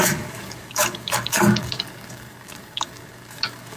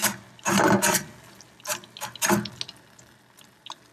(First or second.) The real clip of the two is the second